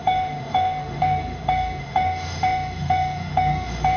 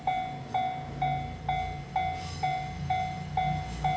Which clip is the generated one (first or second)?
first